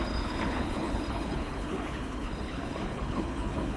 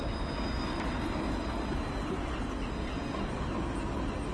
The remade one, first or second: first